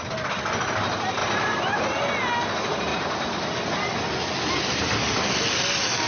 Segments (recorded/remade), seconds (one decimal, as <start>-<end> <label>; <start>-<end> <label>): 0.0-1.2 recorded; 1.2-2.0 remade; 2.0-2.9 recorded; 2.9-3.4 remade; 3.4-6.1 recorded